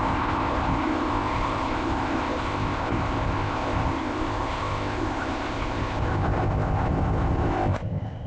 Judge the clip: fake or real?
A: fake